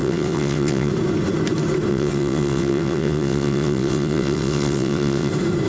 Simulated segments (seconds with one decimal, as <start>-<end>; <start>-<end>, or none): 0.0-0.9; 1.9-5.3